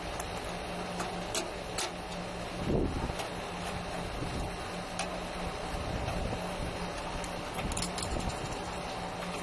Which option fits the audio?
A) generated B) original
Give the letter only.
B